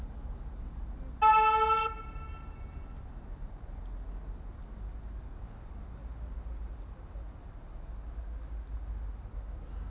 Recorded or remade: recorded